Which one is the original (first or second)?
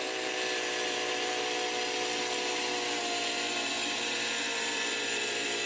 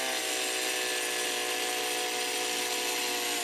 second